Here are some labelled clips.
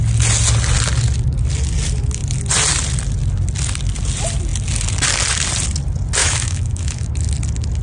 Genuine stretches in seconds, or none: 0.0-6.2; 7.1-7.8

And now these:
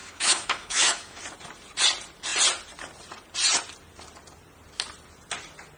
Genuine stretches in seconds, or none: 1.2-5.8

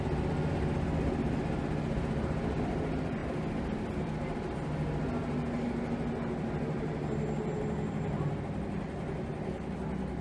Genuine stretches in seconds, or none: 0.0-10.2

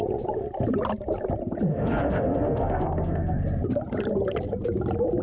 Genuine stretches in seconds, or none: 0.0-1.7; 3.4-5.2

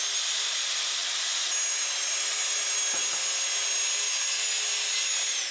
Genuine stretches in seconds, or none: 0.0-5.5

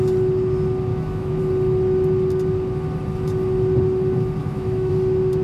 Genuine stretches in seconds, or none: 0.0-0.9; 1.4-4.4; 4.9-5.4

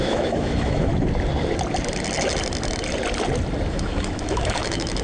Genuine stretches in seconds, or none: 0.9-3.7

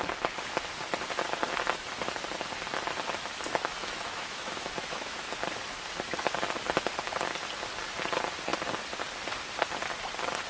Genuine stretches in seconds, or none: 0.0-3.8; 5.3-10.5